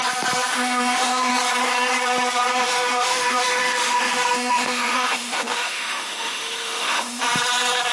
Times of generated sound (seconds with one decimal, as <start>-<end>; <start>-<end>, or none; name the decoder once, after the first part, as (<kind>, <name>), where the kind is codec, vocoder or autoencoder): 0.5-1.3 (autoencoder, DAC-VAE); 2.5-7.2